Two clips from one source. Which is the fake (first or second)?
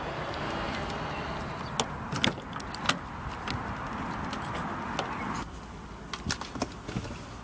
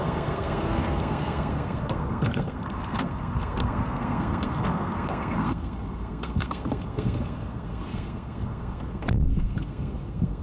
second